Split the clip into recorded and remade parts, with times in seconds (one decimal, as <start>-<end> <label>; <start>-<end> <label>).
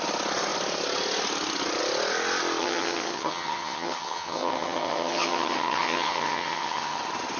0.0-2.6 recorded; 2.6-7.0 remade; 7.0-7.4 recorded